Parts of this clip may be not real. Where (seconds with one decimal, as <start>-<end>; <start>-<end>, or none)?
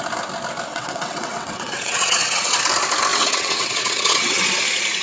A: 0.7-2.6; 3.1-4.5